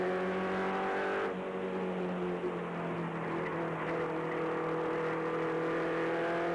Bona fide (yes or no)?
yes